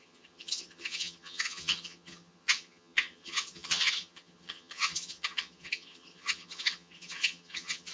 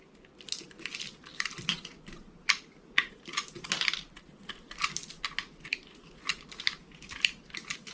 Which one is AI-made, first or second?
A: first